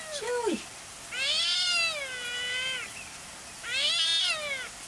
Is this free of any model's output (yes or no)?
yes